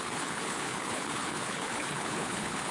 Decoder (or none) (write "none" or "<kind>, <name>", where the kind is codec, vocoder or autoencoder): codec, HILCodec